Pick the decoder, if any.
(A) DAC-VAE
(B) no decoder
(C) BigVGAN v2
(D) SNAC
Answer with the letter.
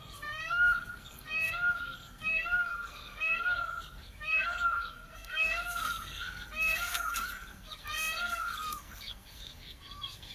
D